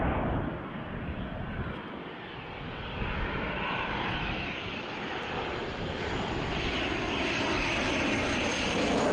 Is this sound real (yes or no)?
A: yes